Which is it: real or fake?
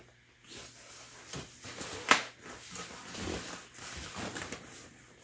real